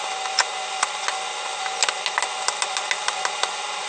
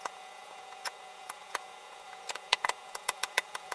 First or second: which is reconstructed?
second